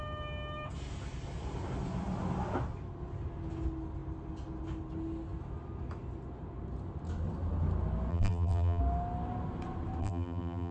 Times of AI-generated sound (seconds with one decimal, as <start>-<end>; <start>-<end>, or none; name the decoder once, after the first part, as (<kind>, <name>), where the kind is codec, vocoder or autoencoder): 8.1-8.8 (vocoder, BigVGAN v2); 10.0-10.7